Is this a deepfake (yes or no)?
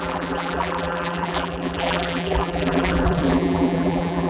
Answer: yes